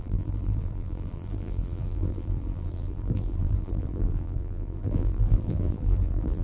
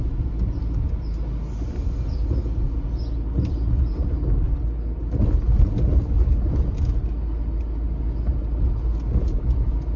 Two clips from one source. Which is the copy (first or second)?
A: first